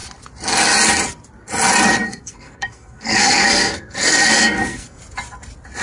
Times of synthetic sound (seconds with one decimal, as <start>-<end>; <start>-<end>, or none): 2.0-5.0